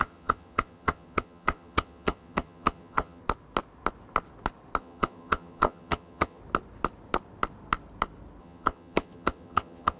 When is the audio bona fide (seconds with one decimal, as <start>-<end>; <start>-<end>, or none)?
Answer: 3.2-4.8; 6.4-8.4